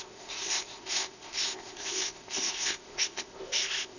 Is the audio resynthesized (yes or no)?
yes